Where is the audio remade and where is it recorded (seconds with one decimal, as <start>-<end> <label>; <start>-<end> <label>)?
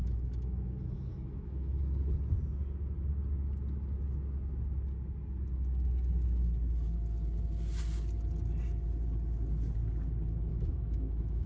0.0-1.8 remade; 1.8-10.5 recorded; 10.5-11.5 remade